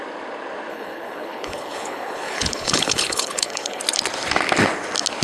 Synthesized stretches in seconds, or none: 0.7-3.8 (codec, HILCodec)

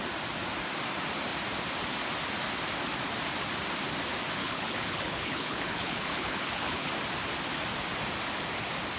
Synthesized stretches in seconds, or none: 4.4-6.9 (codec, HILCodec)

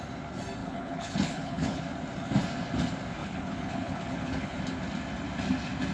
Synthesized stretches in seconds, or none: 0.6-1.8 (codec, HILCodec); 3.2-4.6

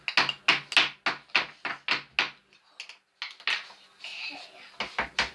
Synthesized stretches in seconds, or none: none

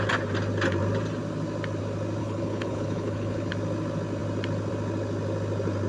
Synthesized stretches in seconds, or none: 2.2-3.5 (codec, HILCodec)

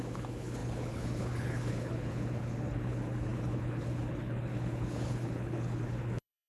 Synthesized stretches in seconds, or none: 0.0-6.5 (codec, HILCodec)

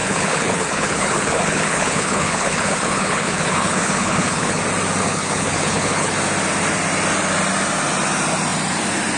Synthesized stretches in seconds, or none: 0.0-4.6 (codec, HILCodec); 5.0-6.1